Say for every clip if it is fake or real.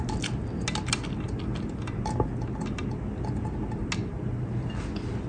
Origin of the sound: real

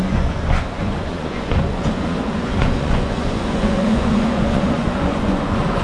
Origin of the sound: fake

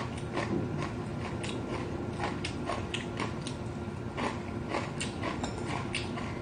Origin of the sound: real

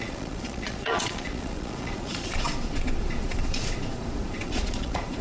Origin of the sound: fake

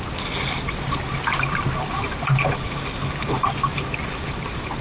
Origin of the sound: real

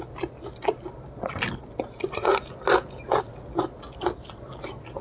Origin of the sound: real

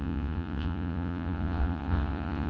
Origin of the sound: fake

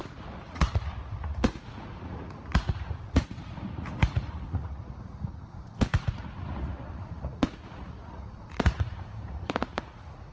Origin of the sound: fake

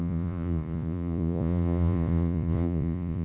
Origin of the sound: fake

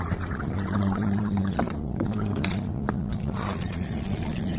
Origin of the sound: fake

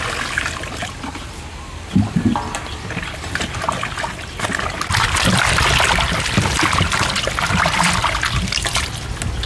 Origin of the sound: real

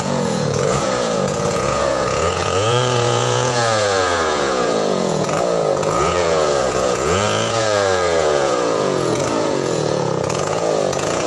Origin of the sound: fake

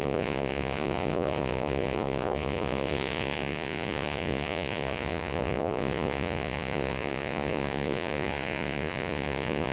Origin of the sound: fake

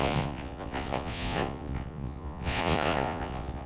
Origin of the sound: fake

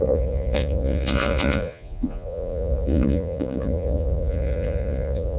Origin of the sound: fake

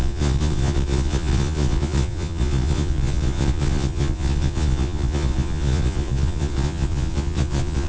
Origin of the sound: fake